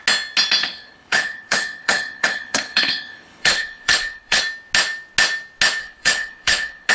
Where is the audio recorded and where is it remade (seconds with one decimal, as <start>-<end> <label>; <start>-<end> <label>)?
0.0-0.6 recorded; 0.6-4.4 remade; 4.4-5.8 recorded; 5.8-6.9 remade